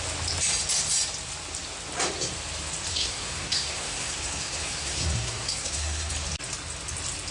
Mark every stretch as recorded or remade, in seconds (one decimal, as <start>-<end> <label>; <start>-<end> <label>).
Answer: 0.0-2.9 recorded; 2.9-6.1 remade; 6.1-7.3 recorded